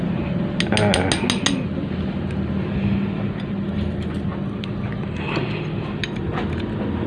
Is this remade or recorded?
recorded